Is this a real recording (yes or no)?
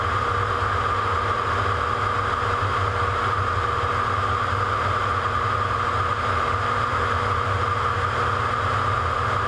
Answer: yes